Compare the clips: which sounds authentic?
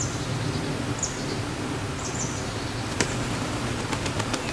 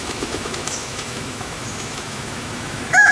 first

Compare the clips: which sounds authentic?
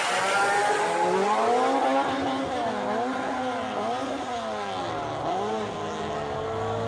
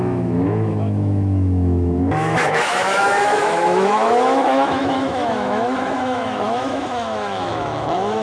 first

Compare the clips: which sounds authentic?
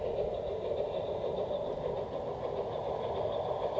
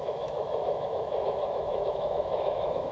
first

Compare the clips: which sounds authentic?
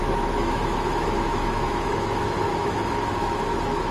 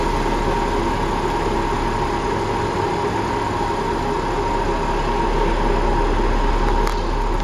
second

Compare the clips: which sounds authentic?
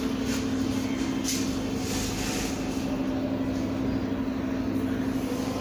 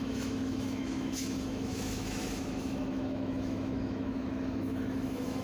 first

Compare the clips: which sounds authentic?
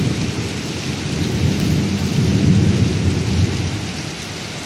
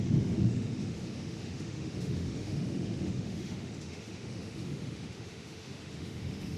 first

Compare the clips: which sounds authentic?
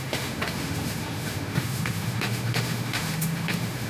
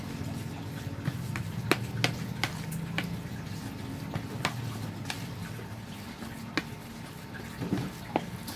second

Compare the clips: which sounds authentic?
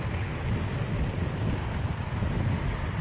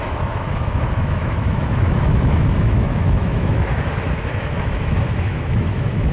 first